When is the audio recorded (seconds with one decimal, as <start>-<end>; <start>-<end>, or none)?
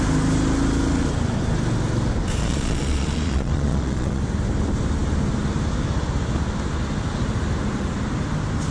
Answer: 0.0-2.4; 4.2-8.7